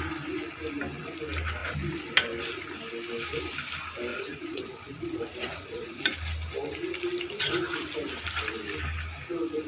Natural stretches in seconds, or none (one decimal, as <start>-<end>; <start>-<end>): 0.0-4.1; 6.0-9.7